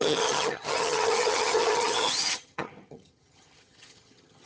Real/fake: fake